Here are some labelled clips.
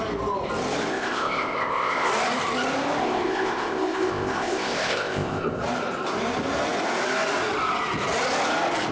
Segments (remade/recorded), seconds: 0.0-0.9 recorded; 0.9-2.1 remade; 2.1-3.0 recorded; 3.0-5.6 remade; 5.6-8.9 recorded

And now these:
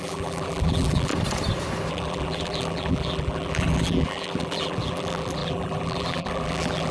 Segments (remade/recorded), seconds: 0.0-1.1 remade; 1.1-1.9 recorded; 1.9-6.9 remade

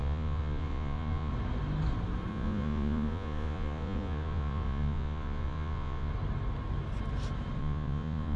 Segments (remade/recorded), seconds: 0.0-1.3 remade; 1.3-2.3 recorded; 2.3-6.1 remade; 6.1-7.6 recorded; 7.6-8.4 remade

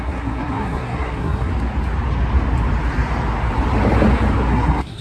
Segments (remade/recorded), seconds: 0.0-1.5 remade; 1.5-4.5 recorded; 4.5-5.0 remade

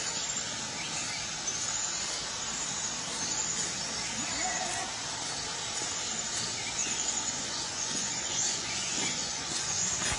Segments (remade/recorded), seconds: 0.0-6.8 recorded; 6.8-10.2 remade